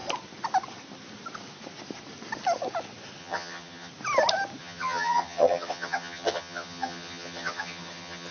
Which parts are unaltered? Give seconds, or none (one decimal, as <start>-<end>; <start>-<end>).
0.0-3.2; 3.9-4.6

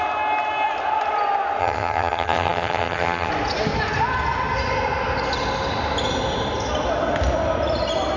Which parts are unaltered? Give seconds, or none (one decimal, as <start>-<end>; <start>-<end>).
0.0-1.6; 3.3-8.2

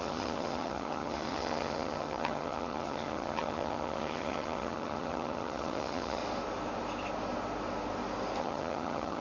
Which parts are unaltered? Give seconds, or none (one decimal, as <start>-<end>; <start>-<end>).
6.2-8.4

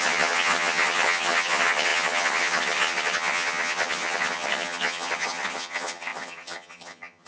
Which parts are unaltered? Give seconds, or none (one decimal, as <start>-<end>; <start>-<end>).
none

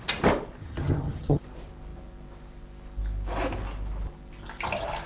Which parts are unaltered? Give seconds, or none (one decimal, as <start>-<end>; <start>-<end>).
0.0-0.6; 1.4-5.1

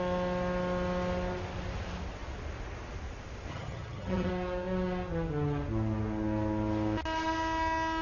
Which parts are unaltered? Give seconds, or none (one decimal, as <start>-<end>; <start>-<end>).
0.0-3.5; 4.3-8.0

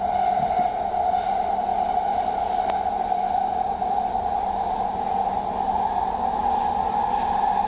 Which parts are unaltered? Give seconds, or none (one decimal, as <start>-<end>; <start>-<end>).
0.0-7.7